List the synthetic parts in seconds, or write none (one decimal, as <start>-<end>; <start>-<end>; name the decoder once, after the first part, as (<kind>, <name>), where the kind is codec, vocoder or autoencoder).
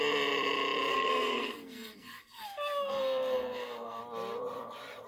0.9-4.0 (codec, SNAC)